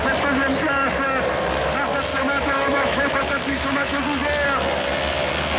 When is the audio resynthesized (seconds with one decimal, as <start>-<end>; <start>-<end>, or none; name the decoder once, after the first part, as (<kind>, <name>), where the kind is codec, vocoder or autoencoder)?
2.1-4.0 (autoencoder, DAC-VAE)

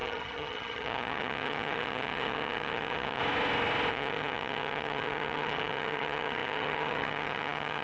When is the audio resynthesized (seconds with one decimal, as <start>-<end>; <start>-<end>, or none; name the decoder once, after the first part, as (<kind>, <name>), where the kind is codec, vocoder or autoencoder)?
0.0-3.2 (vocoder, HiFi-GAN); 3.9-7.8